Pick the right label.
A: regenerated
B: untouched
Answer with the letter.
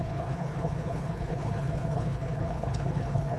A